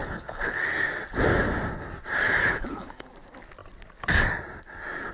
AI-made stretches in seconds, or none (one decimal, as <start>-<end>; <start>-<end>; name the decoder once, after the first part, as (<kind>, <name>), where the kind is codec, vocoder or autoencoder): 0.0-0.6 (codec, HILCodec); 2.4-3.1